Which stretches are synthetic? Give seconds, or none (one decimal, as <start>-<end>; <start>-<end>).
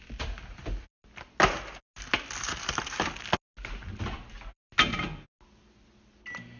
none